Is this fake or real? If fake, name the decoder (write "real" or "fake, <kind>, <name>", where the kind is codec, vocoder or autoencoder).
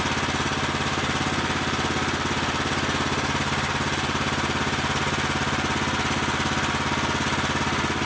real